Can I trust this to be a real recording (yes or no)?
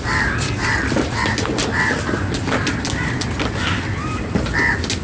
yes